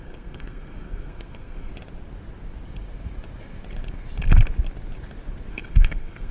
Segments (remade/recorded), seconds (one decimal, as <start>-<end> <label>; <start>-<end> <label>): 0.0-1.7 remade; 1.7-5.5 recorded; 5.5-6.3 remade